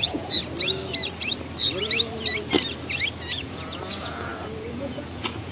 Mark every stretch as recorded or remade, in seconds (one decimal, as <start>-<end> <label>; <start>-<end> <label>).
0.0-0.4 remade; 0.4-3.3 recorded; 3.3-4.3 remade; 4.3-4.8 recorded; 4.8-5.5 remade